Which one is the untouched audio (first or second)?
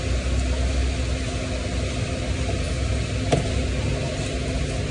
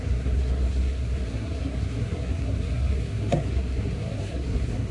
first